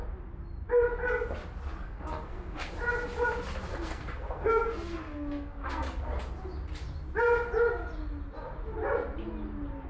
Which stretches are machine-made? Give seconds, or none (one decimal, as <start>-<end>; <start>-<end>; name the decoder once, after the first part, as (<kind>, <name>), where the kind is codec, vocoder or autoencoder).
1.8-2.7 (codec, SNAC); 3.7-6.2